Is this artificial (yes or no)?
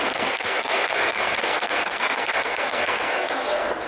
yes